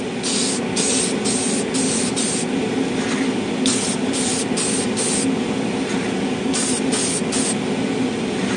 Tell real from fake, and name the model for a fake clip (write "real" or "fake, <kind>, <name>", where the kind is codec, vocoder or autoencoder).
real